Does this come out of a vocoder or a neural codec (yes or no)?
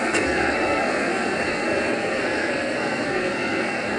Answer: yes